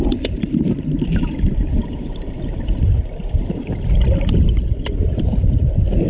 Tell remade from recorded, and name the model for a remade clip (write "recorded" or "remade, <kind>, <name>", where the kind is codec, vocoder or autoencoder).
recorded